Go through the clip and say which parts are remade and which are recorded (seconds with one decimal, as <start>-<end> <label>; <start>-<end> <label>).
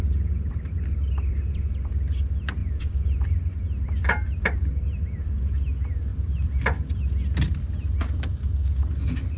0.0-9.4 recorded